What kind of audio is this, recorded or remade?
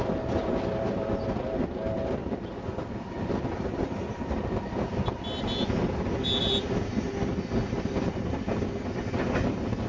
recorded